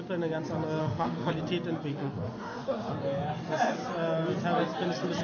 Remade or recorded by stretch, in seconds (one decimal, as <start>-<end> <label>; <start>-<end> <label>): 0.0-0.8 recorded; 0.8-1.3 remade; 1.3-1.9 recorded; 1.9-2.9 remade; 2.9-5.2 recorded